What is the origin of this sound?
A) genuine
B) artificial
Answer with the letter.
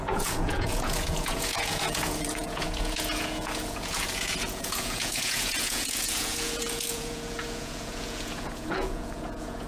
B